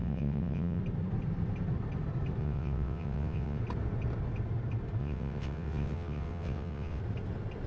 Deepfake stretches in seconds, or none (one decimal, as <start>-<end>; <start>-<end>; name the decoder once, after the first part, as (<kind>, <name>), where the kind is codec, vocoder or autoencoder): 0.0-0.8 (vocoder, WaveNeXt); 2.4-3.6; 5.0-7.0